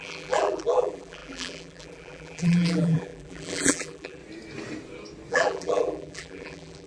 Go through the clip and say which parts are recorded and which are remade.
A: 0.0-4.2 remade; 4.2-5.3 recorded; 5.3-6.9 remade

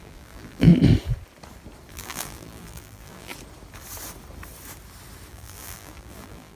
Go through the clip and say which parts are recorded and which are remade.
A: 0.0-0.7 remade; 0.7-1.9 recorded; 1.9-3.3 remade; 3.3-5.3 recorded; 5.3-6.5 remade

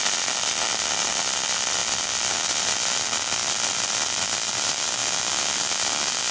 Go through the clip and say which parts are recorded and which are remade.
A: 0.0-5.0 remade; 5.0-6.3 recorded

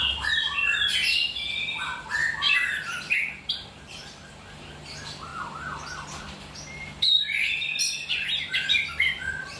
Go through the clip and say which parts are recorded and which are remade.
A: 0.0-2.2 remade; 2.2-2.8 recorded; 2.8-5.3 remade; 5.3-6.2 recorded; 6.2-9.6 remade

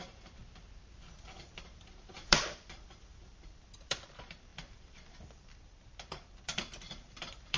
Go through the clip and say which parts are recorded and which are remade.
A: 0.0-0.4 remade; 0.4-1.2 recorded; 1.2-7.6 remade

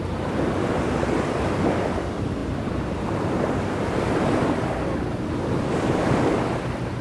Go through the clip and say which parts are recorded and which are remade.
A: 0.0-2.4 recorded; 2.4-6.2 remade; 6.2-7.0 recorded